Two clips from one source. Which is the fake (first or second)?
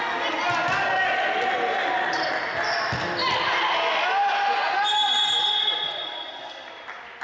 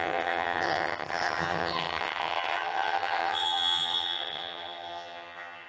second